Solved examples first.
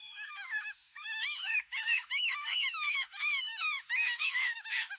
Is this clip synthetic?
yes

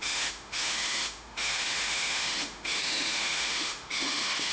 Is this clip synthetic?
yes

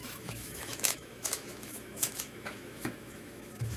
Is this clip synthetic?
yes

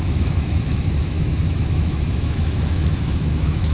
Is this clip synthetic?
yes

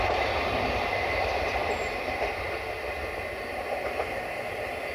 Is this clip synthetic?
no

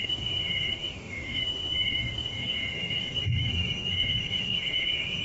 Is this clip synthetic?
yes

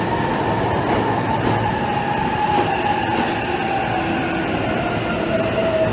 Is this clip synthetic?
no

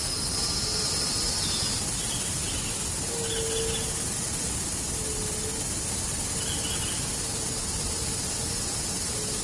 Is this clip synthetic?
no